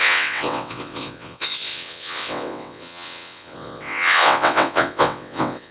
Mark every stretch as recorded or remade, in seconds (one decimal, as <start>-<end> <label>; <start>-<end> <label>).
0.0-5.7 remade